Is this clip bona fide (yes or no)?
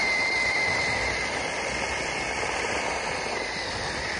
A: yes